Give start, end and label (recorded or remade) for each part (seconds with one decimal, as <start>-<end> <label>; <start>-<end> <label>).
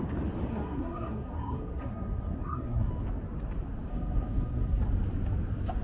0.0-0.5 recorded; 0.5-2.9 remade; 2.9-3.9 recorded; 3.9-4.8 remade; 4.8-5.8 recorded